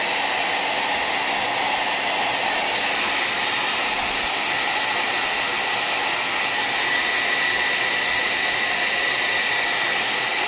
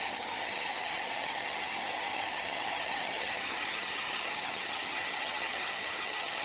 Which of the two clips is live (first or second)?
first